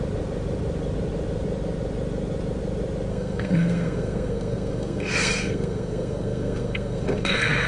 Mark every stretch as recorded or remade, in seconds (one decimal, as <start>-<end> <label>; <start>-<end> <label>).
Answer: 0.0-3.1 recorded; 3.1-7.7 remade